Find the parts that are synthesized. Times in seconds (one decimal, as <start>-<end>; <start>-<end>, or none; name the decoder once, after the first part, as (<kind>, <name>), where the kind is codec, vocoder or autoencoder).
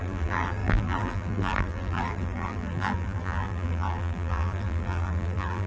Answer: 0.0-5.7 (vocoder, BigVGAN v2)